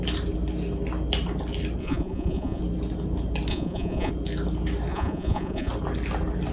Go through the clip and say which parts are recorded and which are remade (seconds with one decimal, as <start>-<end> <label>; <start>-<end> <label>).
0.0-1.8 recorded; 1.8-2.6 remade; 2.6-3.5 recorded; 3.5-4.1 remade; 4.1-4.9 recorded; 4.9-5.7 remade; 5.7-6.5 recorded